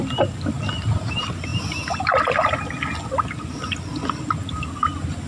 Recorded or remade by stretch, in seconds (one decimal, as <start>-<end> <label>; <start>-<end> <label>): 0.0-5.3 recorded